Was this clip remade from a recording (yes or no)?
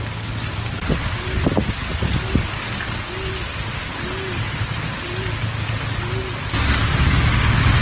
no